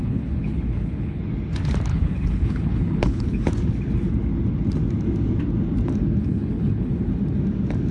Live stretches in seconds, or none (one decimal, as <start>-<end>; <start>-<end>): 1.2-1.9; 3.5-6.2; 6.9-7.9